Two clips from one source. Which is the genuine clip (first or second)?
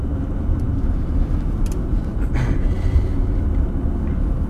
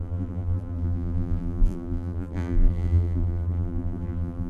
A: first